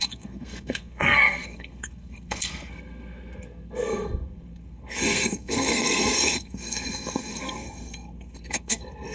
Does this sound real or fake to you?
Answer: fake